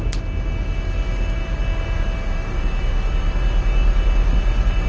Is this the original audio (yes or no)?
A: yes